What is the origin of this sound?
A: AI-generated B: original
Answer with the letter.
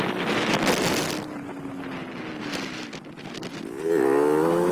B